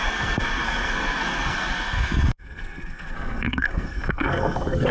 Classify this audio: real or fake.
fake